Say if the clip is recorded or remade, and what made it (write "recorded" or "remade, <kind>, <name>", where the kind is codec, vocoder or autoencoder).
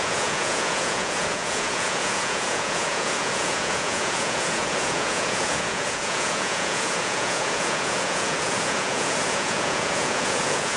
remade, vocoder, Vocos